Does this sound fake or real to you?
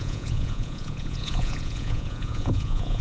fake